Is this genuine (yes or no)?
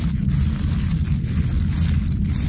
yes